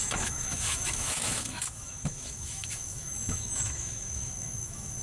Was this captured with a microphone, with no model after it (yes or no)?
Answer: no